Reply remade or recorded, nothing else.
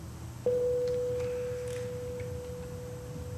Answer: recorded